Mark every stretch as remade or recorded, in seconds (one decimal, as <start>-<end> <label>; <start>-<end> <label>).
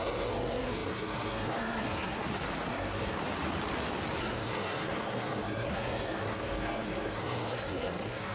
0.0-2.2 remade; 2.2-2.7 recorded; 2.7-3.2 remade; 3.2-4.2 recorded; 4.2-8.3 remade